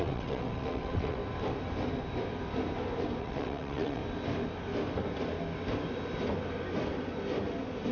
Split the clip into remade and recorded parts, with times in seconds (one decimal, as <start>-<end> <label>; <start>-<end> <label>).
0.0-1.2 remade; 1.2-3.2 recorded; 3.2-4.0 remade; 4.0-7.9 recorded